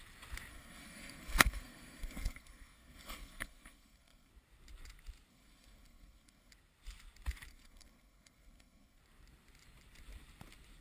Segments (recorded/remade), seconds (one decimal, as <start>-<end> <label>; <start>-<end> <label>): 0.0-0.5 recorded; 0.5-4.3 remade; 4.3-5.3 recorded; 5.3-6.5 remade; 6.5-7.5 recorded; 7.5-9.0 remade; 9.0-10.8 recorded